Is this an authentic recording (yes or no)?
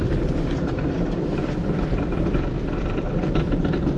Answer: yes